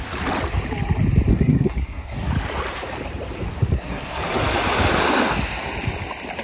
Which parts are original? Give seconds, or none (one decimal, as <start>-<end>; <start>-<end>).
0.0-1.3; 2.3-3.5; 4.2-6.4